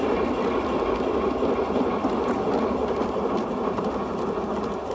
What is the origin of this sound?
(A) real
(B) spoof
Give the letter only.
A